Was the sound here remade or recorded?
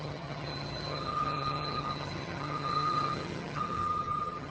remade